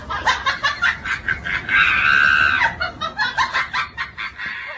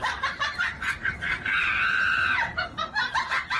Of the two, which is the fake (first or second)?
second